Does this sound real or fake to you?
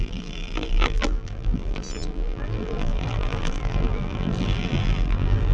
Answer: fake